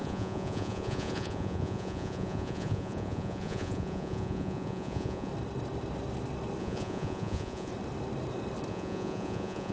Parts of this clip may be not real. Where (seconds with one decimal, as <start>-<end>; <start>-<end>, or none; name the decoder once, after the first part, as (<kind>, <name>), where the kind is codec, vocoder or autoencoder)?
0.0-5.3 (vocoder, Vocos); 6.6-7.7; 8.7-9.7